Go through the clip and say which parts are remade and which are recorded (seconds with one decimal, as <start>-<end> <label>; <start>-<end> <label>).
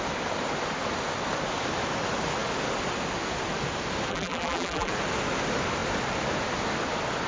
0.0-4.1 recorded; 4.1-4.9 remade; 4.9-7.3 recorded